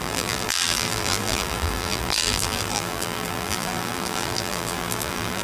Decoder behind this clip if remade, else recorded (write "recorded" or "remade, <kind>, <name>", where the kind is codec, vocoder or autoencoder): remade, vocoder, BigVGAN v2